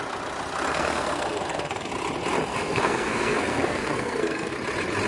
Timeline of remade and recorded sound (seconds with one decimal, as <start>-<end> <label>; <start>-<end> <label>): 0.0-0.7 recorded; 0.7-1.9 remade; 1.9-2.5 recorded; 2.5-4.5 remade; 4.5-5.1 recorded

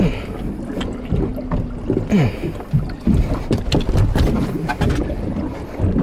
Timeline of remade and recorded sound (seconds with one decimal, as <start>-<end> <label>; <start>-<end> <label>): 0.0-6.0 recorded

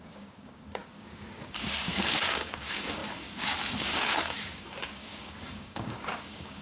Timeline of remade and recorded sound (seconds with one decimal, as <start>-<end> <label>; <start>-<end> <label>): 0.0-6.6 remade